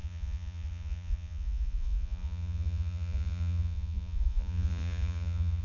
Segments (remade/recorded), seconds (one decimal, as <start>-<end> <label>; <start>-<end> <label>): 0.0-5.6 remade